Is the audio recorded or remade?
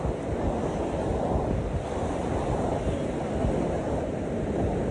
recorded